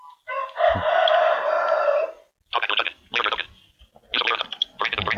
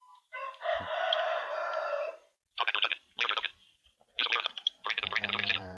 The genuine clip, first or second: first